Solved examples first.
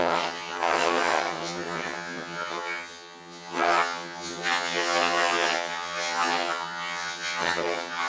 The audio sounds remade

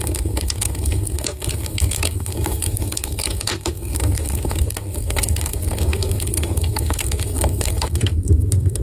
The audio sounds remade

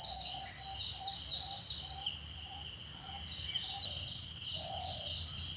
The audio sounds recorded